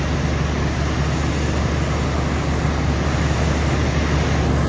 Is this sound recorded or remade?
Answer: recorded